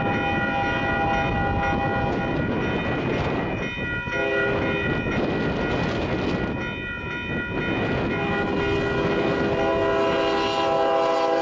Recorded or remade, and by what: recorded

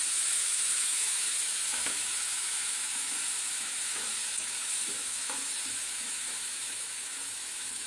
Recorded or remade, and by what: remade, autoencoder, DAC-VAE